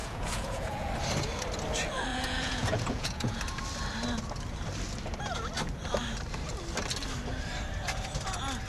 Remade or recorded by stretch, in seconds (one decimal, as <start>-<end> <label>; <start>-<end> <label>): 0.0-0.9 remade; 0.9-2.1 recorded; 2.1-3.4 remade; 3.4-8.7 recorded